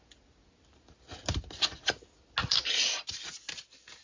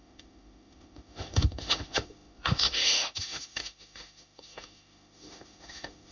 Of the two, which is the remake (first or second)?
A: second